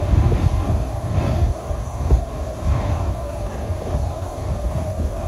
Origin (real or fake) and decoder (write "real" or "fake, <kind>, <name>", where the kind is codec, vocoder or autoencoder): fake, codec, DAC